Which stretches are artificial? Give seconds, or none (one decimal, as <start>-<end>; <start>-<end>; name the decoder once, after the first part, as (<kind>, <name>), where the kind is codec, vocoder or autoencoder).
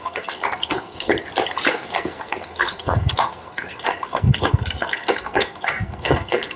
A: 0.0-1.1 (codec, SNAC); 1.7-6.6